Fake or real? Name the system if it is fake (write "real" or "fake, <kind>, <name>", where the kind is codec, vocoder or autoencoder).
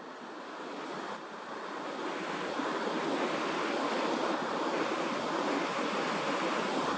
real